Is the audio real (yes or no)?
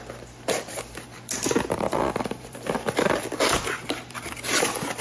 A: no